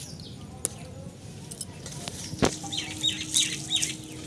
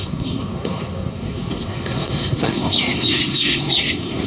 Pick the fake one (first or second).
second